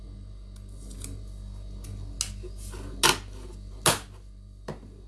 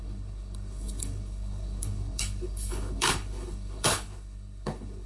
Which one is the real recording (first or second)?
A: first